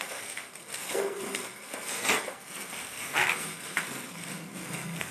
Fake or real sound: fake